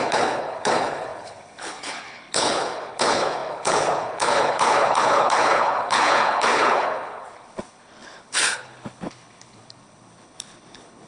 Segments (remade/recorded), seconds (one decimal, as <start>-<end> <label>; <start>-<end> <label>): 0.0-11.1 remade